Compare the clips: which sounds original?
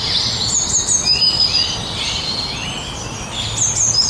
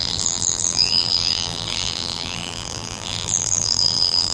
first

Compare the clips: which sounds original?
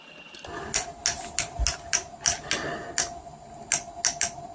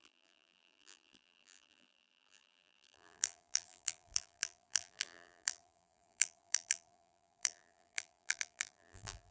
first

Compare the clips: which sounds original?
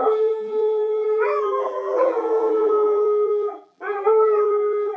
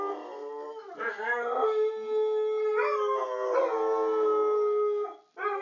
second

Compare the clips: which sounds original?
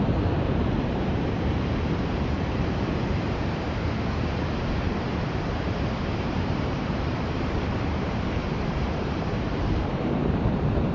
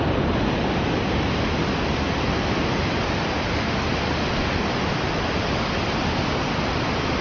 second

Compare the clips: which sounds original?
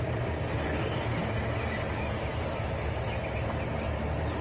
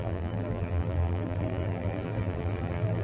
first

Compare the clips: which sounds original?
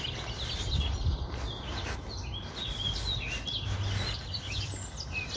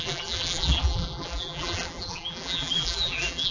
first